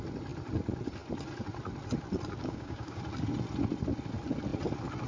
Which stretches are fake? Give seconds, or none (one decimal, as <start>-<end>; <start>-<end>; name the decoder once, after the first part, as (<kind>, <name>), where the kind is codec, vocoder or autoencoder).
2.4-3.0 (codec, DAC)